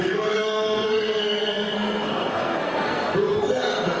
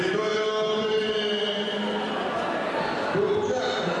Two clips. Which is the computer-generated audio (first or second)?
first